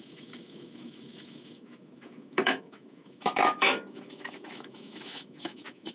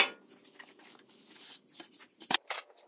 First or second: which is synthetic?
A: first